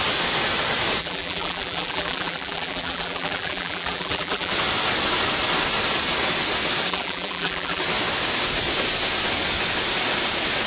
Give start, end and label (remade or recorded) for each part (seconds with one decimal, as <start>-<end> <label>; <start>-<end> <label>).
0.0-1.0 recorded; 1.0-4.5 remade; 4.5-6.9 recorded; 6.9-7.8 remade; 7.8-10.7 recorded